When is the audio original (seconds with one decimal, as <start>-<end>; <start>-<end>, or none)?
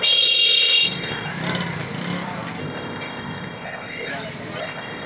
1.3-2.6; 4.1-4.6